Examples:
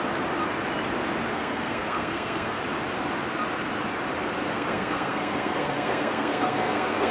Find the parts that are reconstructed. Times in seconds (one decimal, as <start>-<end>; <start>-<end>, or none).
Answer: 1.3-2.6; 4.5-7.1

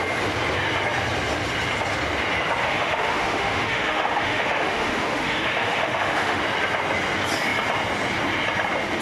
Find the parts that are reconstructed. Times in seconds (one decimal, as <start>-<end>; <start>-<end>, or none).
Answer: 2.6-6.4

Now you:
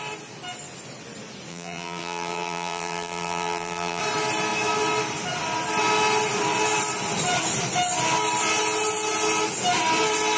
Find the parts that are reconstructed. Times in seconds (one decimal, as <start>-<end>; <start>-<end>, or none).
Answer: 1.5-4.0